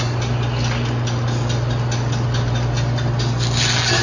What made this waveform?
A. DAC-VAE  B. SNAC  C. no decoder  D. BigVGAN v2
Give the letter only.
C